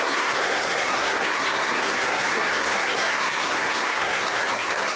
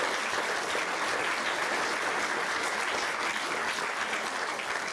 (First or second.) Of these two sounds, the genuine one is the second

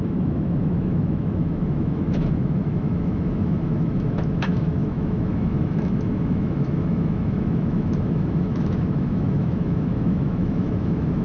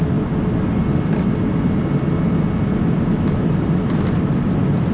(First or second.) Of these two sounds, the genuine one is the second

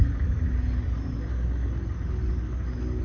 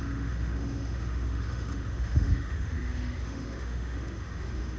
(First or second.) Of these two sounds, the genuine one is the first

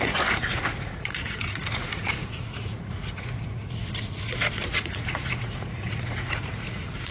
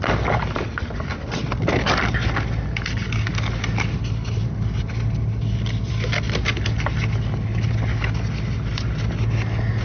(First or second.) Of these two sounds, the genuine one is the second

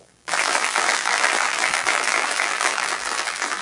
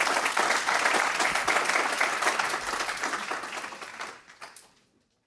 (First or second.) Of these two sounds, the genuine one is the second